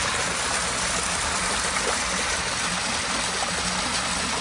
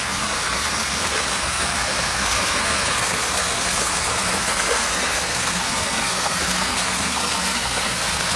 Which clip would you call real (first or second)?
first